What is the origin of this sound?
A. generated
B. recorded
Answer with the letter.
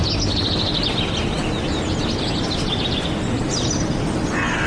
B